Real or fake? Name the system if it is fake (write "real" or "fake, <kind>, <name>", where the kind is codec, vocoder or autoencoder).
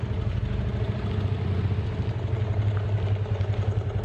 real